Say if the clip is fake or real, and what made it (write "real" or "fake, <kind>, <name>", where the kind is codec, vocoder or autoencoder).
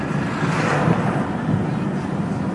real